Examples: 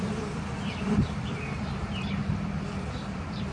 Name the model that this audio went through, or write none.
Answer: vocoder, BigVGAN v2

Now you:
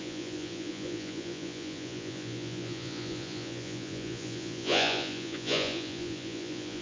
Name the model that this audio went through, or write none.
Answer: vocoder, Vocos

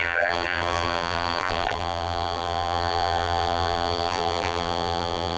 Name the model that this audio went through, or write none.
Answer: vocoder, BigVGAN v2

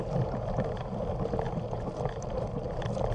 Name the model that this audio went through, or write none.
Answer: none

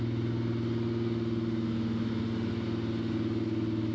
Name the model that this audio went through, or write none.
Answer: none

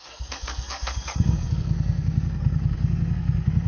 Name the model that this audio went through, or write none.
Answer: codec, SNAC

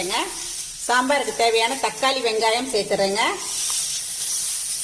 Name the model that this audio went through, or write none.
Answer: none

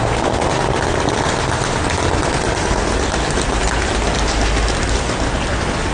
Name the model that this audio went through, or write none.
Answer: none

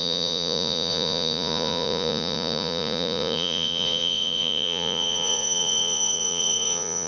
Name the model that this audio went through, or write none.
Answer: vocoder, Vocos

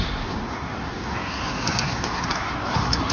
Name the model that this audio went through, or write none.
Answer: codec, SNAC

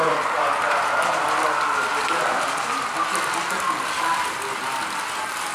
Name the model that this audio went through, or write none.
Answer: none